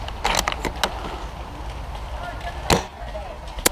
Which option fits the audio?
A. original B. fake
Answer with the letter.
A